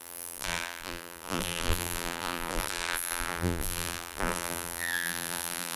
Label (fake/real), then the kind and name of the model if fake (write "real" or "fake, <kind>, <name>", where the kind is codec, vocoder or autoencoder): fake, vocoder, BigVGAN v2